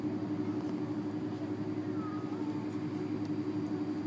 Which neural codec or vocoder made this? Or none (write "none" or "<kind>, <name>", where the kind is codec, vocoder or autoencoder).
none